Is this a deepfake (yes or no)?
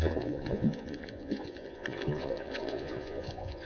yes